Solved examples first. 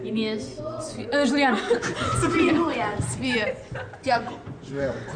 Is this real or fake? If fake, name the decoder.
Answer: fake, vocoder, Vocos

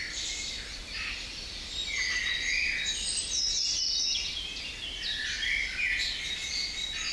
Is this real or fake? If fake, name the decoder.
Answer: real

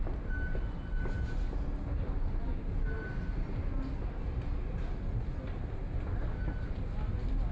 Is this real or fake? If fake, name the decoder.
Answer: real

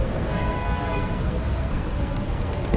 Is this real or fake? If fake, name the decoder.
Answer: fake, codec, SNAC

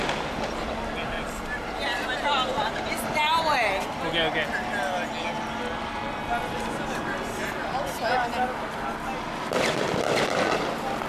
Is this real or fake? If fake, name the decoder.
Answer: real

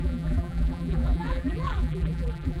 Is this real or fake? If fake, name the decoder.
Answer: fake, vocoder, BigVGAN v2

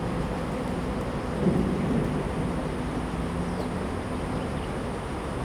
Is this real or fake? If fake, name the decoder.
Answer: real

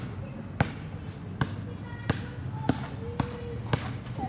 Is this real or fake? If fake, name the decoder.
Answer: real